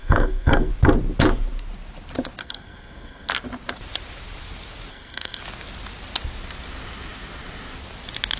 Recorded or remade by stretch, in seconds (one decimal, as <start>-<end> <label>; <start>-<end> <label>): 0.0-0.7 remade; 0.7-2.4 recorded; 2.4-3.3 remade; 3.3-4.9 recorded; 4.9-5.4 remade; 5.4-8.4 recorded